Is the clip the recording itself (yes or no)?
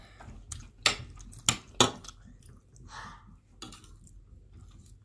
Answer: yes